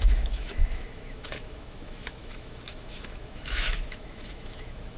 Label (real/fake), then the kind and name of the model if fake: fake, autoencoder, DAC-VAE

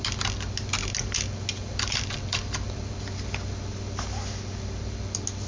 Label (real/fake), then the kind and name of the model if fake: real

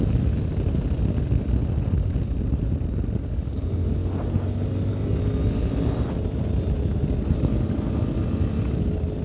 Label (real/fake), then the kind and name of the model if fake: real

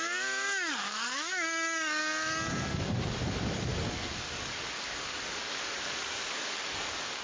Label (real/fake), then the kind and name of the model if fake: fake, codec, DAC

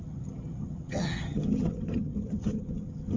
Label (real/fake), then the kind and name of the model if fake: fake, vocoder, HiFi-GAN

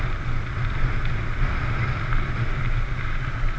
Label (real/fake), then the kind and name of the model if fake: real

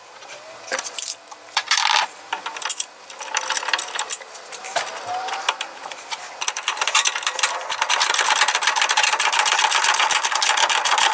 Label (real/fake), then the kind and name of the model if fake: fake, vocoder, BigVGAN v2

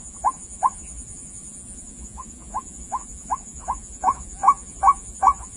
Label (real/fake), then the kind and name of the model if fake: fake, vocoder, Vocos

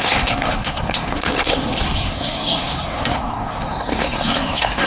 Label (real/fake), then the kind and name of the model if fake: fake, codec, SNAC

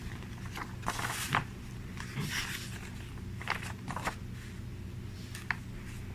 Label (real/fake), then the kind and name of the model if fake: real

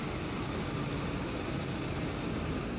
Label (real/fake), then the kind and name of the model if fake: real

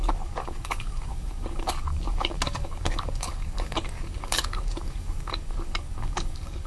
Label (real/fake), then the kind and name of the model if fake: fake, codec, DAC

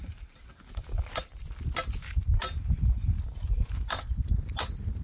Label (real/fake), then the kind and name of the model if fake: real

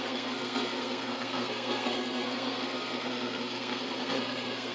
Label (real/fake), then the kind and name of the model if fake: fake, codec, SNAC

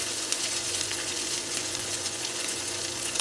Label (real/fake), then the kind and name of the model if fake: fake, vocoder, Vocos